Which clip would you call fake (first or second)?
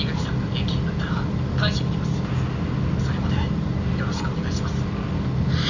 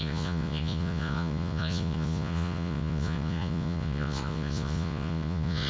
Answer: second